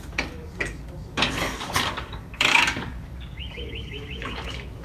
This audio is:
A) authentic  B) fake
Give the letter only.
B